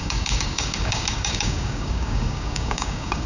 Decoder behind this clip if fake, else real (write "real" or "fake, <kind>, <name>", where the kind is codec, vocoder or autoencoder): fake, codec, DAC